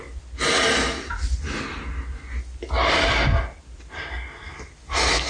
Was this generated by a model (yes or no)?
no